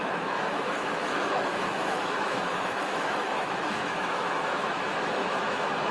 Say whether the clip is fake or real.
fake